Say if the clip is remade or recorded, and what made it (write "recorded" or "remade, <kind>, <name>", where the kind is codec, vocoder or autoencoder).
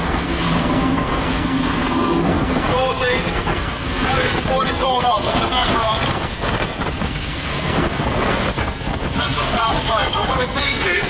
remade, codec, SNAC